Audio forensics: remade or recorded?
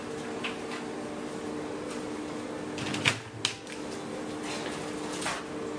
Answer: recorded